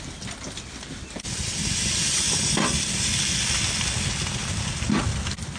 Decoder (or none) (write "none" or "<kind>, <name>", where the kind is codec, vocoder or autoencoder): none